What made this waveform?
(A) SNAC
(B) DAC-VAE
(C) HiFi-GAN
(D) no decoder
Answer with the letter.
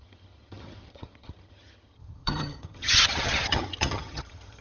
C